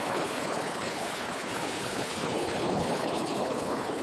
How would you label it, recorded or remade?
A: remade